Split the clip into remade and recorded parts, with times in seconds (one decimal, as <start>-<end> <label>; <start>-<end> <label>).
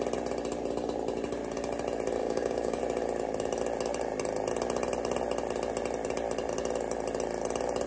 0.0-2.2 recorded; 2.2-2.8 remade; 2.8-7.9 recorded